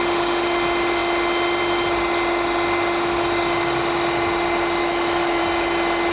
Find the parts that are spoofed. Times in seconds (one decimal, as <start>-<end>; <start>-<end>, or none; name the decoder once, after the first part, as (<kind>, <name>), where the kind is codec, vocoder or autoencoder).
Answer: 4.8-5.4 (autoencoder, DAC-VAE)